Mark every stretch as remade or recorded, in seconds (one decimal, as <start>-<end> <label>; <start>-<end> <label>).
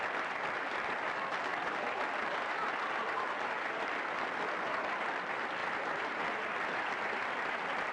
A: 0.0-7.9 recorded